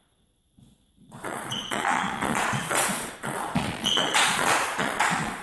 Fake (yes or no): yes